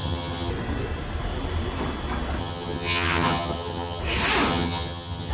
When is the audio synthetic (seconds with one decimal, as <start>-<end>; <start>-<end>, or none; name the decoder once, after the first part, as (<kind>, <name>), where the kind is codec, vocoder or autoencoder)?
0.0-0.5 (vocoder, HiFi-GAN); 2.4-4.0; 4.5-5.3